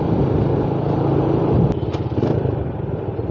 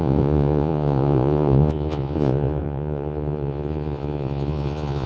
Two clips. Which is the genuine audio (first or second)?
first